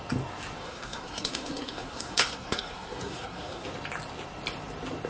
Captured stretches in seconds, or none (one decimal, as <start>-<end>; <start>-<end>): 0.0-0.6; 3.7-5.1